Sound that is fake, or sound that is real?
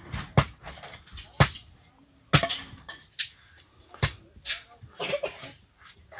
real